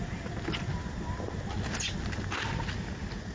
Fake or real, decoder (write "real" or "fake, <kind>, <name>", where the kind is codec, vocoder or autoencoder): real